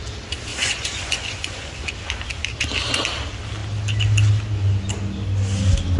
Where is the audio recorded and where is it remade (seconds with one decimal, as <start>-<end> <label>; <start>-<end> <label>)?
0.0-0.5 recorded; 0.5-1.9 remade; 1.9-6.0 recorded